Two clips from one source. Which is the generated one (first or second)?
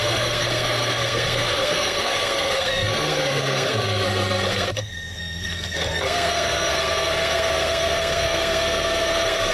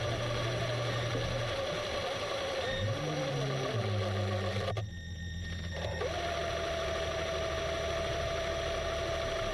first